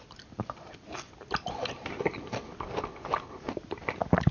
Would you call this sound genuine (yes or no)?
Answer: yes